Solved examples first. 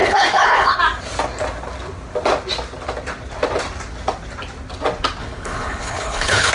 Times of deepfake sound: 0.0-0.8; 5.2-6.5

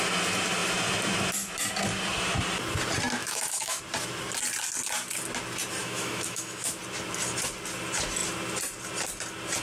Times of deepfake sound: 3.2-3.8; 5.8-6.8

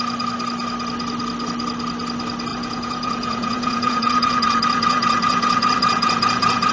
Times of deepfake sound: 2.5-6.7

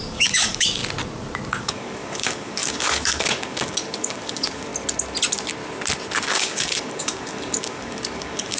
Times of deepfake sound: 0.0-0.8; 1.6-4.7; 6.2-8.6

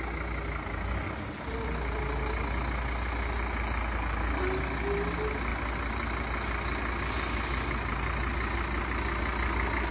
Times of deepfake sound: none

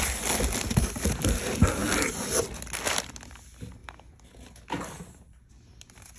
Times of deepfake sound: none

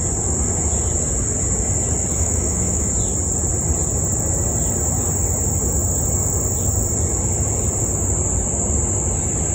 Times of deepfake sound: 2.1-2.9

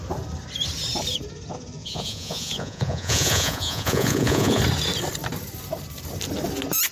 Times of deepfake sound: 1.8-4.6